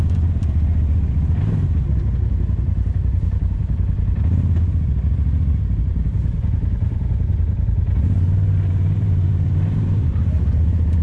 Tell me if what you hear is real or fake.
fake